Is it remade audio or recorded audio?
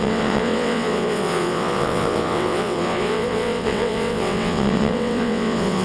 remade